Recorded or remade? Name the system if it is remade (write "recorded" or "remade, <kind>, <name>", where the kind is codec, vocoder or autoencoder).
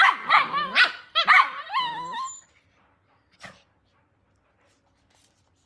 recorded